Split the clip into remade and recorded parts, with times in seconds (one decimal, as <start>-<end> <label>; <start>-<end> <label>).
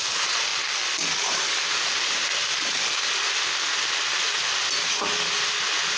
0.0-0.5 remade; 0.5-1.2 recorded; 1.2-2.4 remade; 2.4-6.0 recorded